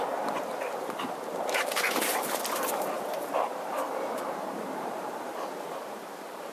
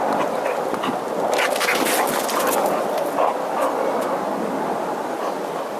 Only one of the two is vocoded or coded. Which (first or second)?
first